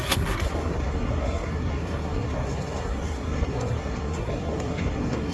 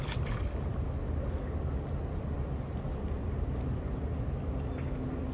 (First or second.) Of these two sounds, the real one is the second